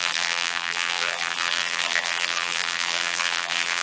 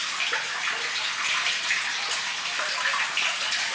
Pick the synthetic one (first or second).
first